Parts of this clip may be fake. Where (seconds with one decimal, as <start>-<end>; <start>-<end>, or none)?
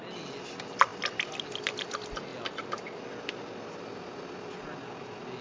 none